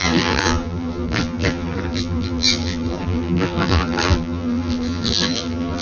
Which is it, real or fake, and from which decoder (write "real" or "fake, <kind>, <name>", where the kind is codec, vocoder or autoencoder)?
fake, vocoder, BigVGAN v2